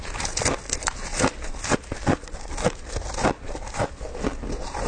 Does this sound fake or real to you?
real